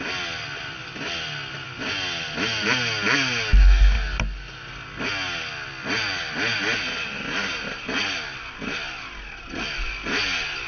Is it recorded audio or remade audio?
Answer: recorded